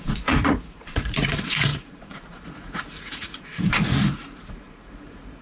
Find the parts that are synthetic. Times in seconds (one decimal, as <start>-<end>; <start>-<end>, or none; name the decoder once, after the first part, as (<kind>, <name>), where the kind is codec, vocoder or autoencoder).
0.0-5.4 (vocoder, Vocos)